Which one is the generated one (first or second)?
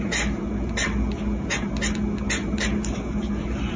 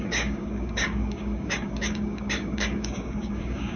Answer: second